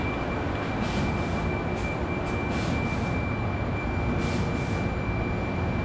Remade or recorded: recorded